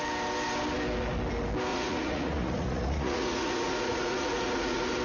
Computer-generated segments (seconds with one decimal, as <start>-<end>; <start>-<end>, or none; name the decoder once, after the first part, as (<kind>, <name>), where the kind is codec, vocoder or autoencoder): 1.7-5.0 (vocoder, Vocos)